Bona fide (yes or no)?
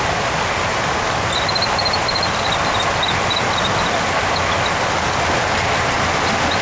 yes